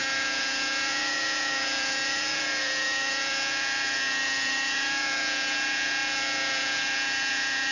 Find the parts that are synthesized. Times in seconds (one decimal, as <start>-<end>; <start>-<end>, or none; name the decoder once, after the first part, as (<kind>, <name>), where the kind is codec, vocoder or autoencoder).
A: 0.0-7.7 (vocoder, Vocos)